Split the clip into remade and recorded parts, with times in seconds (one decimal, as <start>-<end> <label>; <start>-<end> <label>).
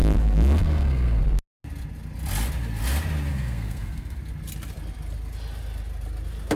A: 0.0-1.2 remade; 1.2-3.3 recorded; 3.3-4.2 remade; 4.2-6.6 recorded